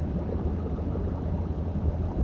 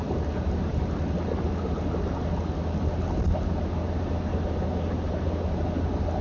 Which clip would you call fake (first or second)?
first